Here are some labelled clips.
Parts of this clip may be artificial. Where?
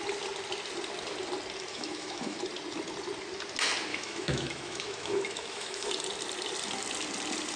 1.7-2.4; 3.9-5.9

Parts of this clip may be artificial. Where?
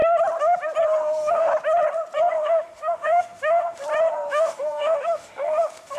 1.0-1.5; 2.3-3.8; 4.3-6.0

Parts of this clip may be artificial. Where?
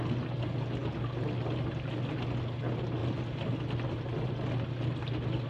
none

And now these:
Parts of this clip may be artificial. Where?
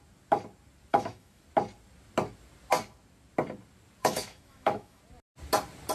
0.9-1.4; 4.0-5.0